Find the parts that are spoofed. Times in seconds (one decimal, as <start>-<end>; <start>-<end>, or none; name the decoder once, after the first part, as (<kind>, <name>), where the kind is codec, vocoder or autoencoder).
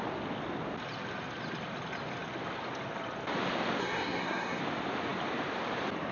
3.8-4.6 (codec, SNAC)